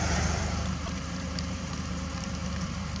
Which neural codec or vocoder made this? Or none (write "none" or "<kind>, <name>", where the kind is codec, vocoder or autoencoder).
vocoder, BigVGAN v2